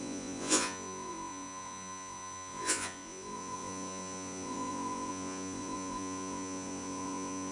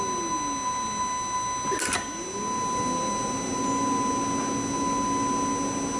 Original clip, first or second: second